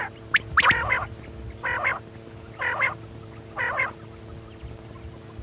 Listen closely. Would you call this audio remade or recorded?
recorded